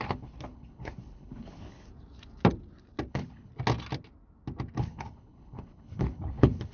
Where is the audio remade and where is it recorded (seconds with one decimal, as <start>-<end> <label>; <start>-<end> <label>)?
0.0-1.9 remade; 1.9-3.1 recorded; 3.1-3.5 remade; 3.5-4.8 recorded; 4.8-6.7 remade